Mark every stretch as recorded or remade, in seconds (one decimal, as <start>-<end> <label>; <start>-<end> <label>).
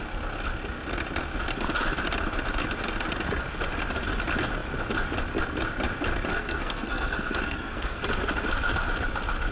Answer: 0.0-6.3 recorded; 6.3-8.0 remade; 8.0-9.5 recorded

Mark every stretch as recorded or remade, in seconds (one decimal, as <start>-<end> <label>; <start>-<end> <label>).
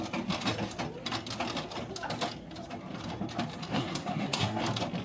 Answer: 0.0-3.7 recorded; 3.7-4.6 remade; 4.6-5.0 recorded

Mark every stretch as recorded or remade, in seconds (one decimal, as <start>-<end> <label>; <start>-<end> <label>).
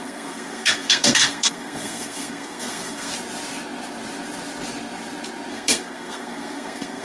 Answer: 0.0-3.1 remade; 3.1-5.5 recorded; 5.5-7.0 remade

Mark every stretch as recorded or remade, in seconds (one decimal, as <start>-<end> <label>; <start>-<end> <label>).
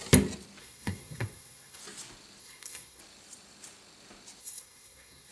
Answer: 0.0-0.6 recorded; 0.6-1.8 remade; 1.8-2.4 recorded; 2.4-3.0 remade; 3.0-4.4 recorded; 4.4-5.3 remade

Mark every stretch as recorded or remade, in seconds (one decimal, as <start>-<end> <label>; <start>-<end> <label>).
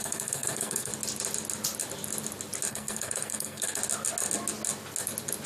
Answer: 0.0-0.9 remade; 0.9-2.7 recorded; 2.7-3.8 remade; 3.8-5.5 recorded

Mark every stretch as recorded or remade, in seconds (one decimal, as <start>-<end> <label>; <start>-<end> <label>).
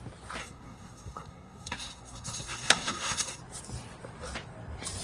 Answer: 0.0-0.4 recorded; 0.4-3.4 remade; 3.4-5.0 recorded